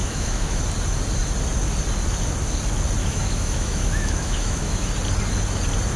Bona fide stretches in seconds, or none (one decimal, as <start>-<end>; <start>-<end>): 0.6-3.0; 4.9-6.0